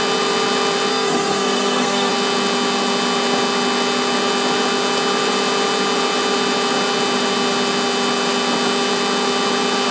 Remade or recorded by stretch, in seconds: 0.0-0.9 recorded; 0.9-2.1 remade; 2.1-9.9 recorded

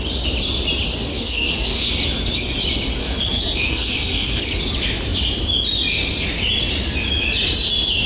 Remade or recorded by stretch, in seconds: 0.0-1.1 recorded; 1.1-1.9 remade; 1.9-3.0 recorded; 3.0-4.4 remade; 4.4-8.1 recorded